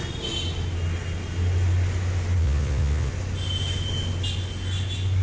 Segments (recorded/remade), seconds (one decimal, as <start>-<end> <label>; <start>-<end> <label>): 0.0-2.4 recorded; 2.4-3.1 remade; 3.1-5.2 recorded